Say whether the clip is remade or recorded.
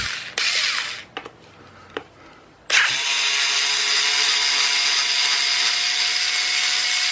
recorded